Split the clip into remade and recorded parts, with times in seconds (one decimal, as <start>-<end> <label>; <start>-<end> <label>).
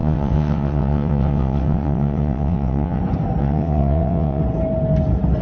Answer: 0.0-3.0 remade; 3.0-3.4 recorded; 3.4-4.4 remade; 4.4-5.4 recorded